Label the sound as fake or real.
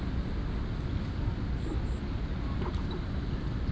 real